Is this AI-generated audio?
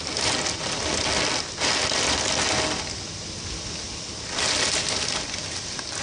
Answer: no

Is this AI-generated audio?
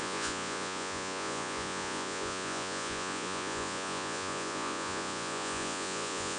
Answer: yes